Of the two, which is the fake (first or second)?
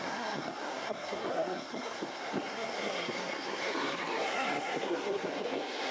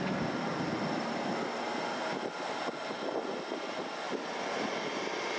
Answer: first